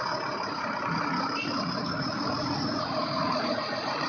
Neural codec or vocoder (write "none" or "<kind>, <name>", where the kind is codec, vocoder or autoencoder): vocoder, Vocos